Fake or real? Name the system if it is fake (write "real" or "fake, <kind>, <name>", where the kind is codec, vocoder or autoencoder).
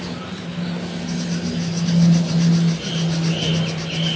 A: real